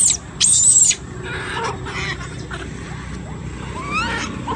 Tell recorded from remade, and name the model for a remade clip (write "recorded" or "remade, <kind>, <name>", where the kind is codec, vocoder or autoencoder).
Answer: recorded